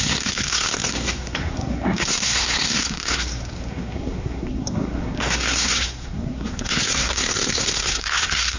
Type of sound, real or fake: fake